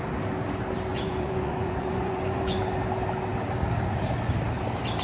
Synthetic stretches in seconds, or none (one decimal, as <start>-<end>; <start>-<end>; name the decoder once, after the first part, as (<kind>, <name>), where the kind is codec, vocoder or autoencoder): 0.9-2.6 (vocoder, Vocos)